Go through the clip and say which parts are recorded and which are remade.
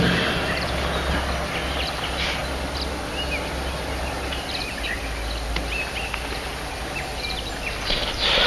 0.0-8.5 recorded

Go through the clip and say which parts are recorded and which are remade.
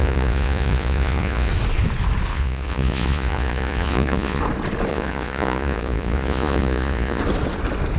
0.0-1.5 remade; 1.5-2.3 recorded; 2.3-4.4 remade; 4.4-4.9 recorded; 4.9-7.2 remade; 7.2-8.0 recorded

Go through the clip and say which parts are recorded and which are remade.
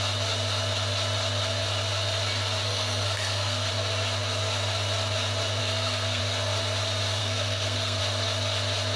0.0-2.7 recorded; 2.7-3.7 remade; 3.7-5.6 recorded; 5.6-6.2 remade; 6.2-7.2 recorded; 7.2-8.0 remade; 8.0-9.0 recorded